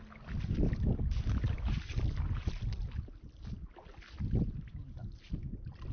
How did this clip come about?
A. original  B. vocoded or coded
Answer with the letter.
A